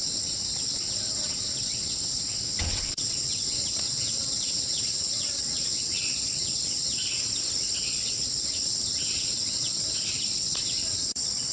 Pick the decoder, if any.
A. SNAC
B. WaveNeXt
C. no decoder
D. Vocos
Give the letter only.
B